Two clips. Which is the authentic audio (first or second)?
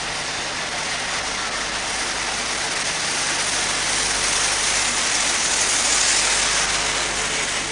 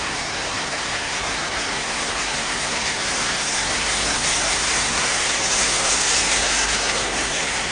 first